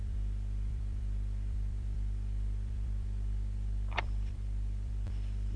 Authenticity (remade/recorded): remade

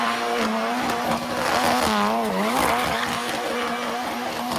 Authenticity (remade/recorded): recorded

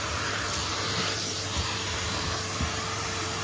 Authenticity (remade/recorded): remade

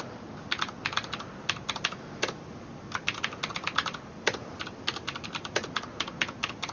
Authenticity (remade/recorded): recorded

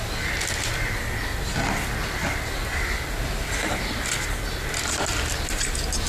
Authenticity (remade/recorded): recorded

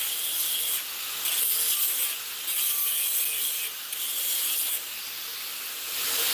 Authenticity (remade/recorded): recorded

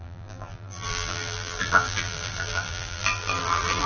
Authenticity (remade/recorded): remade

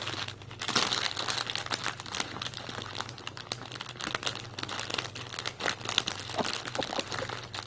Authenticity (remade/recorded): recorded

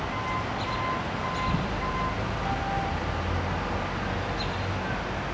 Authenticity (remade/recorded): recorded